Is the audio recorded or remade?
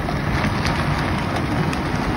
recorded